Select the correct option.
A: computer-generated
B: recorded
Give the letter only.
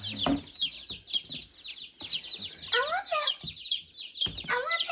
B